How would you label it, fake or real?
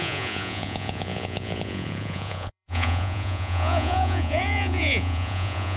fake